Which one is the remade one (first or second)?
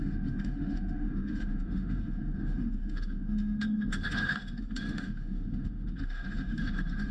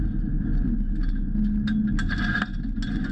first